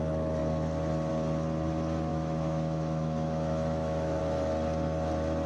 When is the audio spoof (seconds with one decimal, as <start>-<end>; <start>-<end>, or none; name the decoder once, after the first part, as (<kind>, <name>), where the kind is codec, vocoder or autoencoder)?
2.1-4.2 (autoencoder, DAC-VAE)